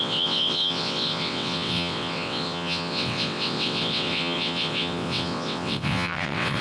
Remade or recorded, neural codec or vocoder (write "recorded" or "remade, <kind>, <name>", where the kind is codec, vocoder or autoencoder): remade, vocoder, WaveNeXt